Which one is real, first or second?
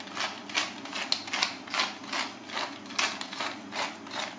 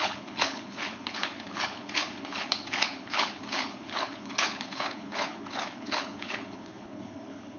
first